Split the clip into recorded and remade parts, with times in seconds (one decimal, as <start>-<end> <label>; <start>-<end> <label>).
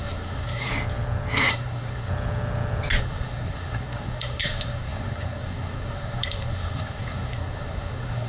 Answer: 0.0-0.7 remade; 0.7-1.5 recorded; 1.5-2.1 remade; 2.1-3.0 recorded; 3.0-8.3 remade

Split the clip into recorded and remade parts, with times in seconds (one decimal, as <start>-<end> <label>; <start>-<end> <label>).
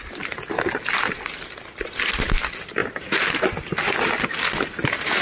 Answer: 0.0-5.2 recorded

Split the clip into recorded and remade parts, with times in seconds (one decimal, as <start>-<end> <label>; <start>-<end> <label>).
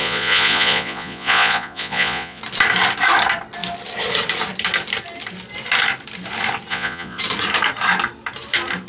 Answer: 0.0-2.4 remade; 2.4-6.7 recorded; 6.7-7.2 remade; 7.2-8.9 recorded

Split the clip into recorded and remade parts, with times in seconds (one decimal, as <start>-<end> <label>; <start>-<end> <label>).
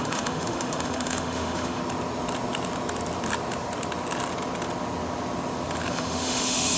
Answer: 0.0-1.8 remade; 1.8-5.9 recorded; 5.9-6.8 remade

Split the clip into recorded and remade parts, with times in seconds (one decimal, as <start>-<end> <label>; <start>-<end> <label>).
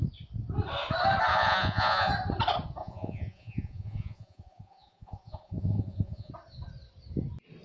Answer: 0.0-1.3 recorded; 1.3-2.1 remade; 2.1-2.8 recorded; 2.8-6.3 remade; 6.3-7.6 recorded